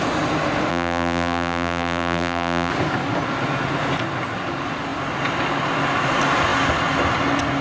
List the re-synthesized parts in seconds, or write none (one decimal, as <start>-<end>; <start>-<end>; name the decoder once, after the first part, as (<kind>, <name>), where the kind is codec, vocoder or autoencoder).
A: 0.7-2.7 (vocoder, BigVGAN v2)